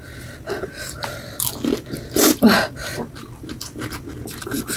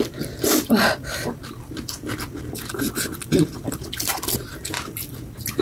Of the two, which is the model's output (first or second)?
second